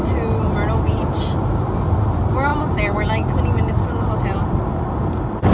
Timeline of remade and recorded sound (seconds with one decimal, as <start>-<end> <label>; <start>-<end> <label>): 0.0-5.5 recorded